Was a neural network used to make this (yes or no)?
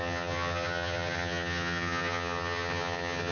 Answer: yes